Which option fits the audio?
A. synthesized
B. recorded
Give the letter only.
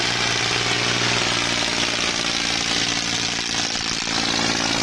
B